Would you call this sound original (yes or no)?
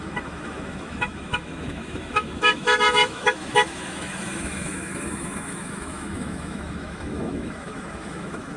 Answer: no